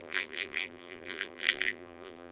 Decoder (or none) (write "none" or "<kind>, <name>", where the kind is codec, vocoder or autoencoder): vocoder, BigVGAN v2